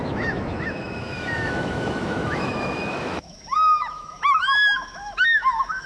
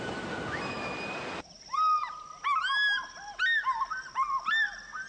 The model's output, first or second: first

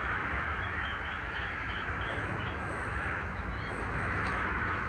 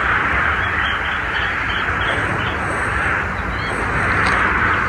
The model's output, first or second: first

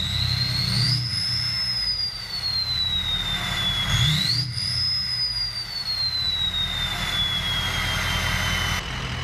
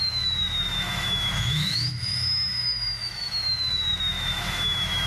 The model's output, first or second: second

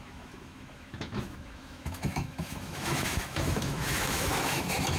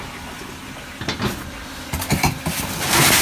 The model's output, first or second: first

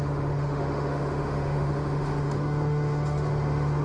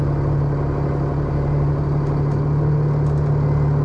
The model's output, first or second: first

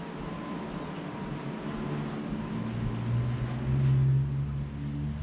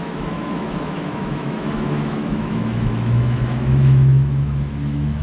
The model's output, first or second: second